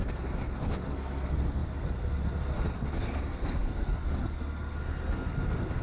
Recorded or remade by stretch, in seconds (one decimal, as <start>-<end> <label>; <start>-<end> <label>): 0.0-5.8 remade